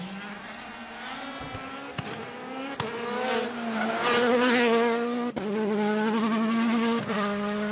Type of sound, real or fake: real